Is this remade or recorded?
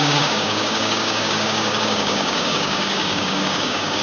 remade